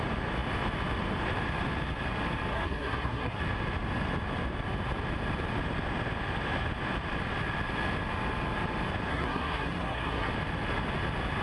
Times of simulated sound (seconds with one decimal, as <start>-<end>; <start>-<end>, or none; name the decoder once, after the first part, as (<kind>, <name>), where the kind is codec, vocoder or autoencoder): 2.5-3.4 (codec, SNAC); 9.1-10.3